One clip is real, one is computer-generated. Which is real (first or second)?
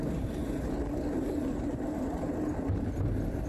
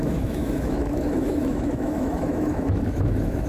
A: first